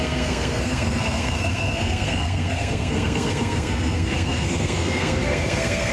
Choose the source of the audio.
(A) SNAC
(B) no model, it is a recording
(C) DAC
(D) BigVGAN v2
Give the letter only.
A